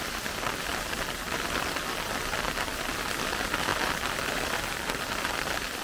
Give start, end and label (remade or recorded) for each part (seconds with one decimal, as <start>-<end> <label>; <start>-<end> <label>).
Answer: 0.0-0.7 remade; 0.7-3.3 recorded; 3.3-3.7 remade; 3.7-5.2 recorded; 5.2-5.8 remade